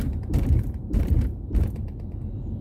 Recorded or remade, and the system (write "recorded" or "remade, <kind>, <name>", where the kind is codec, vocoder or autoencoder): remade, vocoder, BigVGAN v2